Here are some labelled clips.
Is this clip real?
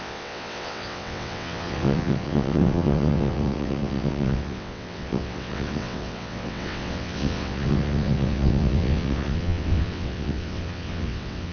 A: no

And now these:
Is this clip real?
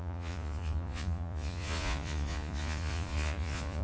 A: no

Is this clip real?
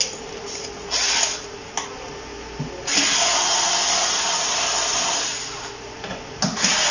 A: yes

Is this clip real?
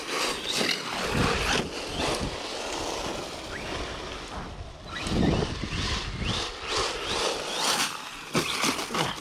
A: yes